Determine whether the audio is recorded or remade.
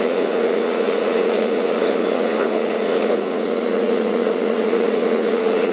remade